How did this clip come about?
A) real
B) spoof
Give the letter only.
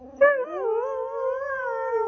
A